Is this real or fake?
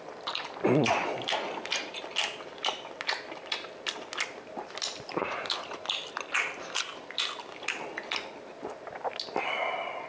real